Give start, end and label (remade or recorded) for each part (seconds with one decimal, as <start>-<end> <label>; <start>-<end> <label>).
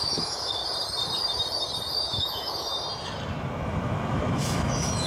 0.0-0.6 remade; 0.6-2.0 recorded; 2.0-2.7 remade; 2.7-4.1 recorded; 4.1-5.1 remade